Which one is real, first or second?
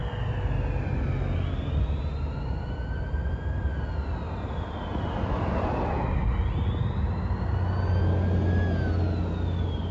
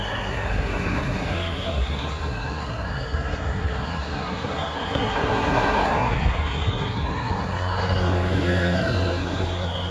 first